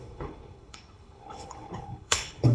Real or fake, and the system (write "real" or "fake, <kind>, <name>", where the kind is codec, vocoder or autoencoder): fake, codec, HILCodec